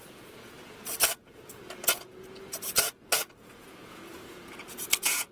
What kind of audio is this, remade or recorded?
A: remade